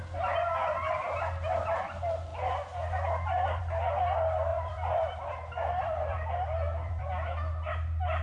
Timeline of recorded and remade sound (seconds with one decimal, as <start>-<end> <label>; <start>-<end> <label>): 0.0-4.5 recorded; 4.5-7.0 remade; 7.0-8.2 recorded